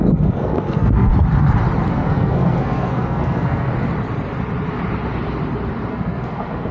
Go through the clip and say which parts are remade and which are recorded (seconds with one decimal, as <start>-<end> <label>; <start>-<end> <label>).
0.0-1.1 remade; 1.1-1.9 recorded; 1.9-3.7 remade; 3.7-5.9 recorded; 5.9-6.7 remade